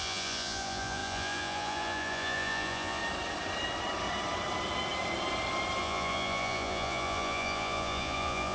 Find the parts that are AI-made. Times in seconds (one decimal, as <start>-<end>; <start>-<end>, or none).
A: 0.0-3.0; 5.8-8.5